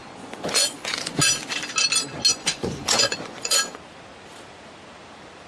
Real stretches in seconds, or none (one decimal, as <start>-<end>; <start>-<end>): 1.2-2.3; 3.8-5.5